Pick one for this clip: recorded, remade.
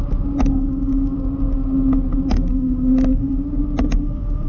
recorded